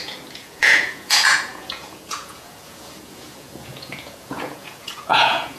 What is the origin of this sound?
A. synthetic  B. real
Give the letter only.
A